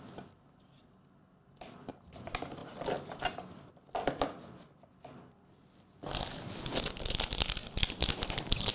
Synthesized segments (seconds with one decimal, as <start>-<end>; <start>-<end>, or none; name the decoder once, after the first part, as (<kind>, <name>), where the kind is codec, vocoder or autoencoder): none